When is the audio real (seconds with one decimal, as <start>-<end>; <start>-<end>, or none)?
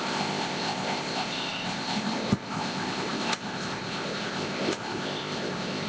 none